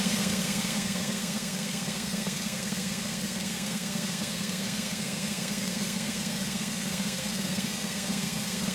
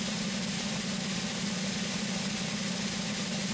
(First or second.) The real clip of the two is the second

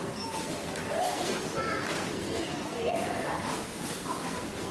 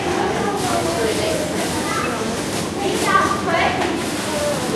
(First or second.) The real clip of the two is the second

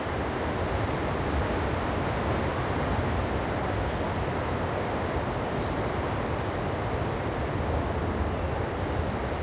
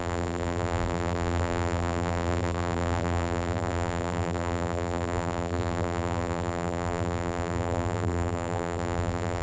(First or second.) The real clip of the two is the first